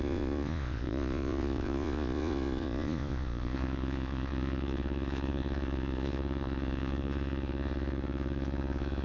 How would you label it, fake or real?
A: fake